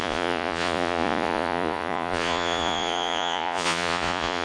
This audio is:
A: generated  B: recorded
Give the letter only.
A